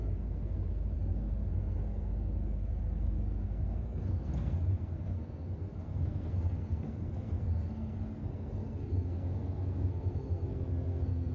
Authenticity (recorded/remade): remade